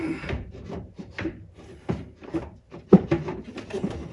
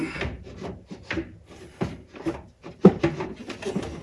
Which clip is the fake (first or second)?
first